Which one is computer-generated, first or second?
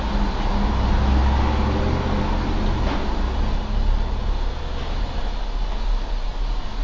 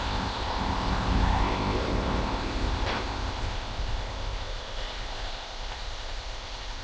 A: second